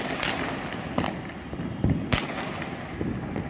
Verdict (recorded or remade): recorded